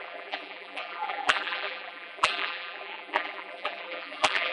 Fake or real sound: fake